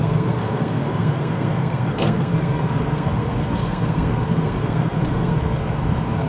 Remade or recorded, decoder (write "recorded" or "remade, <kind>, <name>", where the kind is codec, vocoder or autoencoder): remade, codec, SNAC